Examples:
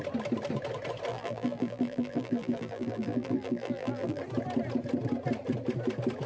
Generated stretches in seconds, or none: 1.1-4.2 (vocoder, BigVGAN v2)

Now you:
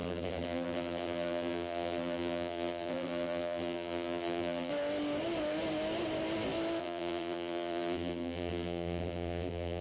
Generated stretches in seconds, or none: 0.0-4.7 (vocoder, BigVGAN v2); 6.8-9.8

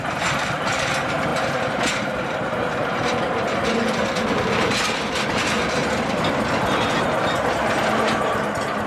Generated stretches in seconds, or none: 0.0-5.6 (vocoder, BigVGAN v2); 6.7-8.9